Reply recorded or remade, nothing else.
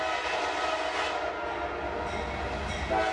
recorded